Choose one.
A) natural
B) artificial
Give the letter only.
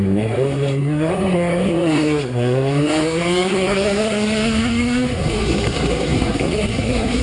B